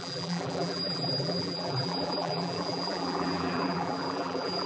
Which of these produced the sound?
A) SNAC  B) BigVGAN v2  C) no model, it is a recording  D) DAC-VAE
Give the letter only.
B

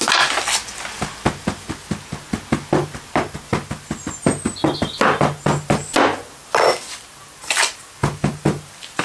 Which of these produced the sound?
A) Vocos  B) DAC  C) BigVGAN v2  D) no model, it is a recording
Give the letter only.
D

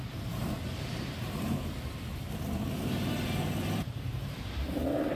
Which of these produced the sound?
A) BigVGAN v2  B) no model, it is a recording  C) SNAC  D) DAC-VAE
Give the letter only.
A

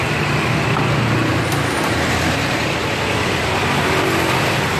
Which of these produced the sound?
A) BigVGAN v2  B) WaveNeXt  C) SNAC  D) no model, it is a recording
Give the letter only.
A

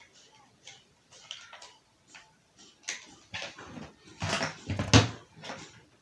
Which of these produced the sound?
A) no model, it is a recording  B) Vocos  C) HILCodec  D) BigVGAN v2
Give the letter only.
A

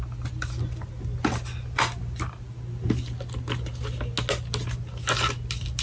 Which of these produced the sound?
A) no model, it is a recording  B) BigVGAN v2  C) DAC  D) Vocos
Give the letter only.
A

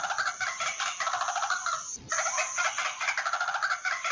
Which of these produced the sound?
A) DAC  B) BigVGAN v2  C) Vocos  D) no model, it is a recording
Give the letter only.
B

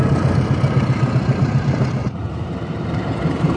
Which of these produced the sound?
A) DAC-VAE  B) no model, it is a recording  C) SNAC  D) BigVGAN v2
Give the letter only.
D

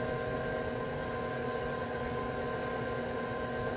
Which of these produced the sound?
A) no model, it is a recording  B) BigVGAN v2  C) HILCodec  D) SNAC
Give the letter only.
A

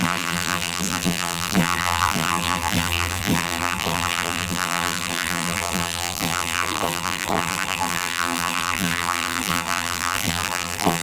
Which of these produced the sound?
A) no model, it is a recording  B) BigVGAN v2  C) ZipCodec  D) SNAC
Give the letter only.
B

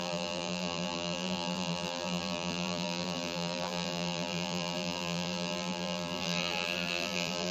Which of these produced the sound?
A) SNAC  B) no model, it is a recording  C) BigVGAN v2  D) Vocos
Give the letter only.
C